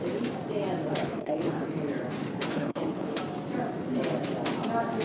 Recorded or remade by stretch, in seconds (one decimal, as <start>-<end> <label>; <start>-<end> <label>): 0.0-0.9 recorded; 0.9-1.6 remade; 1.6-2.5 recorded; 2.5-3.2 remade; 3.2-5.0 recorded